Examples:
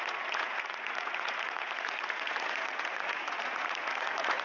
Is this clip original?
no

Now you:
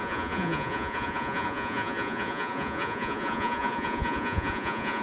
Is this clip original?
no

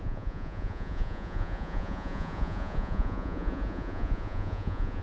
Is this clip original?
no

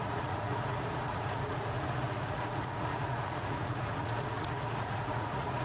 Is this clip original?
no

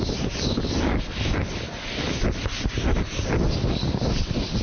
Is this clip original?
yes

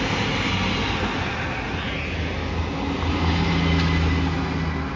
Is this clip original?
yes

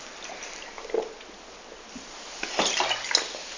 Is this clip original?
yes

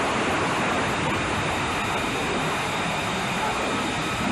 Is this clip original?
yes